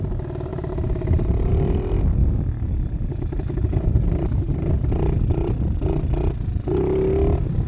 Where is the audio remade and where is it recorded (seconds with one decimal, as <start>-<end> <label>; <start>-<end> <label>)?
0.0-0.5 recorded; 0.5-1.5 remade; 1.5-2.2 recorded; 2.2-4.7 remade; 4.7-7.7 recorded